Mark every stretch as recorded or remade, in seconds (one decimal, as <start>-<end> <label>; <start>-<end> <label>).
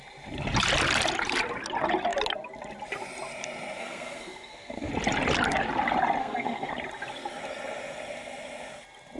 0.0-3.8 recorded; 3.8-4.9 remade; 4.9-6.2 recorded; 6.2-6.7 remade; 6.7-9.2 recorded